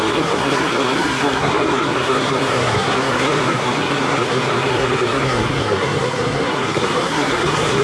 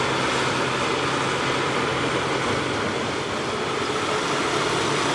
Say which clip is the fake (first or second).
first